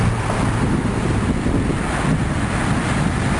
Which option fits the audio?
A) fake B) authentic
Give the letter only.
B